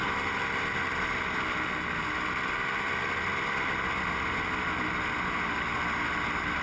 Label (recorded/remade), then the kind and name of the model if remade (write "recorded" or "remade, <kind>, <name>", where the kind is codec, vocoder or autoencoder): recorded